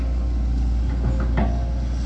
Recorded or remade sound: recorded